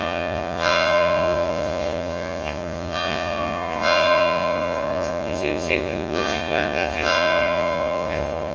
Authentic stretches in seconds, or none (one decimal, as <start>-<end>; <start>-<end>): none